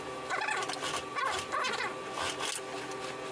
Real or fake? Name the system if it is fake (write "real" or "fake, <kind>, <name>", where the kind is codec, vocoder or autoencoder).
real